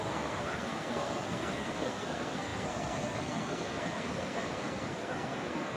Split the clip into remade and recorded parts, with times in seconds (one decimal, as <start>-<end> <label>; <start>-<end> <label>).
0.0-5.8 remade